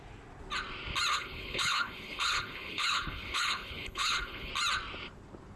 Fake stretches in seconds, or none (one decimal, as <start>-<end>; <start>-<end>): 1.1-4.5